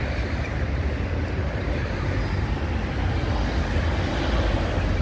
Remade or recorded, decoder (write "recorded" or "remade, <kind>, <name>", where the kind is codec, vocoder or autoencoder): recorded